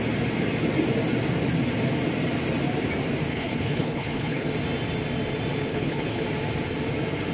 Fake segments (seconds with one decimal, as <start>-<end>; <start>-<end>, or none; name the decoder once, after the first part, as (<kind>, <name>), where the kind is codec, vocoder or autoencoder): 3.3-4.5 (codec, HILCodec); 5.7-6.2